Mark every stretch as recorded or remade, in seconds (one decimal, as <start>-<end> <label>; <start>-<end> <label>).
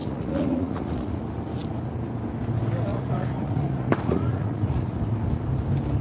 0.0-1.2 remade; 1.2-2.9 recorded; 2.9-5.0 remade; 5.0-6.0 recorded